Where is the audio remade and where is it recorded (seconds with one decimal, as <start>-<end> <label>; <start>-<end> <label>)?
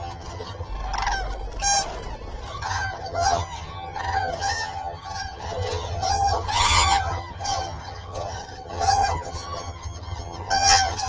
0.0-0.7 remade; 0.7-2.5 recorded; 2.5-11.1 remade